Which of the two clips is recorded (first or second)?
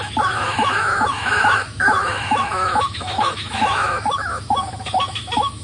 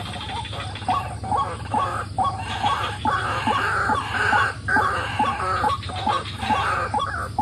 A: second